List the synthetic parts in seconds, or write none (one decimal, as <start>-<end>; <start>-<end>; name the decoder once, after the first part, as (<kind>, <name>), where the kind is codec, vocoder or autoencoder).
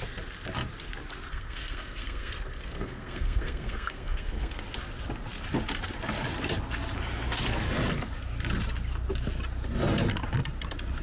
1.3-4.6 (codec, SNAC)